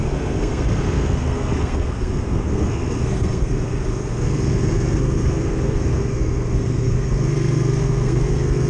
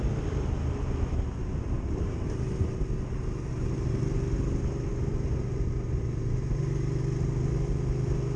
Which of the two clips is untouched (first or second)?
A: second